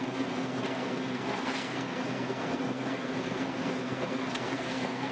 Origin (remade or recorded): remade